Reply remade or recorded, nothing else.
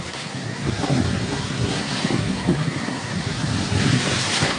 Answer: remade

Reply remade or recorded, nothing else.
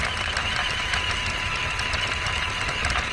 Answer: recorded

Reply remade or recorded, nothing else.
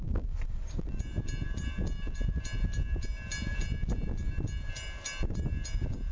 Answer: recorded